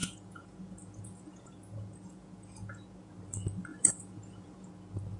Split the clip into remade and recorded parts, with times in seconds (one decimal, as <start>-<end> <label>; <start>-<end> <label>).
0.0-3.1 remade; 3.1-3.7 recorded; 3.7-4.7 remade; 4.7-5.2 recorded